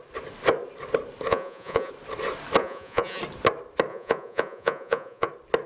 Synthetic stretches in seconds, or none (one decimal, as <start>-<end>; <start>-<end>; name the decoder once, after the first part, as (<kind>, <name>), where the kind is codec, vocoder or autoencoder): 1.3-1.9 (vocoder, Vocos); 2.6-3.2; 3.9-5.3